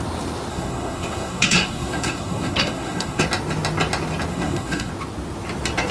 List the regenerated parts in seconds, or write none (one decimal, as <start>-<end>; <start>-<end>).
0.5-3.2; 4.3-4.9